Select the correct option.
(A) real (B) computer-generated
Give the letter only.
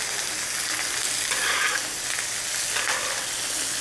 A